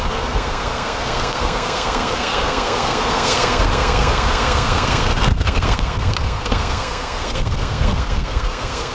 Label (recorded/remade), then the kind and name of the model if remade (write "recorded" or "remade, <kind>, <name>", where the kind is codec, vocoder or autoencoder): remade, codec, SNAC